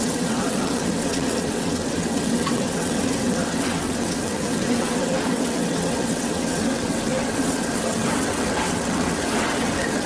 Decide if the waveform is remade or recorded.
remade